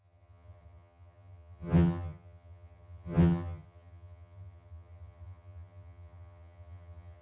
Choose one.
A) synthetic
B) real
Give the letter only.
A